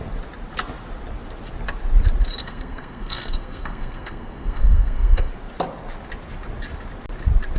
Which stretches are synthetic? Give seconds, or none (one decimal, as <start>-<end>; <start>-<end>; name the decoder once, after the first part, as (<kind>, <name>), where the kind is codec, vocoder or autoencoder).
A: 2.4-5.3 (codec, SNAC)